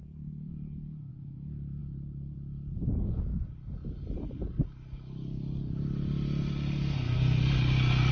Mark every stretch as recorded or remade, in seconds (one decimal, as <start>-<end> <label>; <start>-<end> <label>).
0.0-3.3 remade; 3.3-8.1 recorded